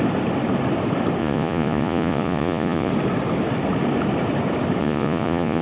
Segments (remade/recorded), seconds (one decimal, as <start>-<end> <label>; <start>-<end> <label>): 0.0-1.2 recorded; 1.2-2.9 remade; 2.9-4.8 recorded; 4.8-5.6 remade